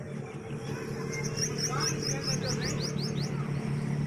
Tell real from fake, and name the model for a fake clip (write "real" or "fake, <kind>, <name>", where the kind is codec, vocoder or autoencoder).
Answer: real